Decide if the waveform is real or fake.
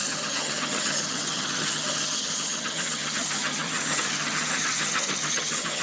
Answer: fake